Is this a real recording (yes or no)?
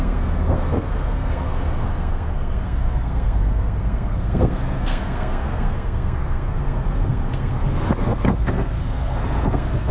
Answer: no